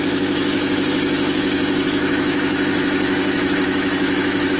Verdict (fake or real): fake